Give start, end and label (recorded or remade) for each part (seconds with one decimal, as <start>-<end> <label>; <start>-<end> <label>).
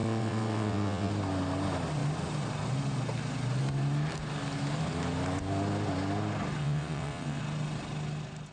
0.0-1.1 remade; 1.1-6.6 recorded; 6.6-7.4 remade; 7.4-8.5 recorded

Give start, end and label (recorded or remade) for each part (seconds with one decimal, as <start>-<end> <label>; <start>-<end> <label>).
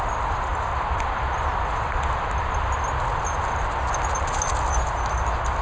0.0-5.6 recorded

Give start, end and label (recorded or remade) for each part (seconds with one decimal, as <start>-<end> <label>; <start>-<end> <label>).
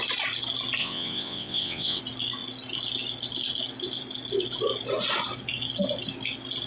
0.0-0.8 recorded; 0.8-2.0 remade; 2.0-6.7 recorded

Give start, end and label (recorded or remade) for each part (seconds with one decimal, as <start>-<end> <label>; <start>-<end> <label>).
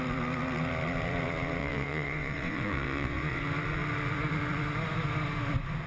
0.0-1.6 recorded; 1.6-3.4 remade; 3.4-5.9 recorded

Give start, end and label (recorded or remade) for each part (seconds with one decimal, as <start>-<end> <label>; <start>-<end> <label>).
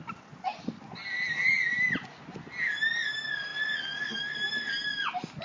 0.0-5.4 recorded